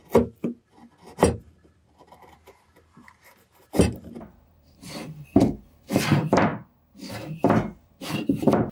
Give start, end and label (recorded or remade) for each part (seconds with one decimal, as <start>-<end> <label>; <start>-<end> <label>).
0.0-0.7 recorded; 0.7-6.5 remade; 6.5-7.1 recorded; 7.1-8.7 remade